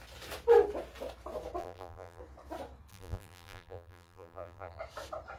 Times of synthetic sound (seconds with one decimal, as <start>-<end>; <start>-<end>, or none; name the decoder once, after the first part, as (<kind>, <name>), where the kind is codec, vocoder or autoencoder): 1.6-2.2 (vocoder, BigVGAN v2); 2.9-4.8